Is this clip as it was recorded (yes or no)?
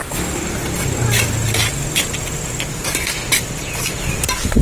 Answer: yes